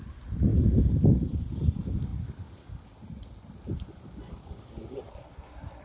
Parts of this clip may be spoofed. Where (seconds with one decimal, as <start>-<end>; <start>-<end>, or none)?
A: 5.1-5.8